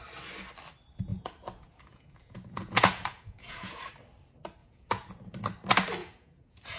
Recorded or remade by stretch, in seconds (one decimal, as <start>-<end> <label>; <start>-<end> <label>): 0.0-1.1 recorded; 1.1-3.8 remade; 3.8-4.6 recorded; 4.6-5.1 remade; 5.1-6.0 recorded; 6.0-6.8 remade